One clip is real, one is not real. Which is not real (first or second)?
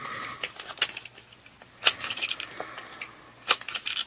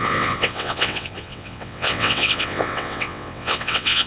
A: second